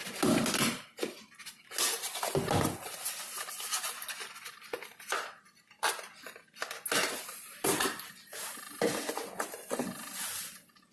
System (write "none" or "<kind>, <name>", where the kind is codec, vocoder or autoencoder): none